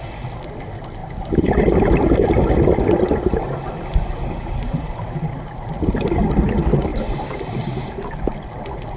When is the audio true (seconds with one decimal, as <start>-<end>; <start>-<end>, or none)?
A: 0.0-6.9; 8.2-9.0